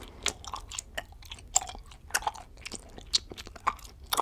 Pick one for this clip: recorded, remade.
recorded